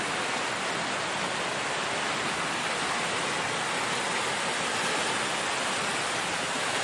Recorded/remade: recorded